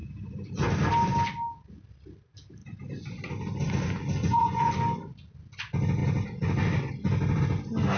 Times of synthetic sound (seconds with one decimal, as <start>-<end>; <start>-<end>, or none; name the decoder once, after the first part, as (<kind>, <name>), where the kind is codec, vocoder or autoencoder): 4.2-4.7 (vocoder, Vocos)